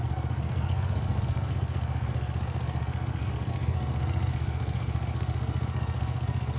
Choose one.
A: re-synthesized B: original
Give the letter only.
A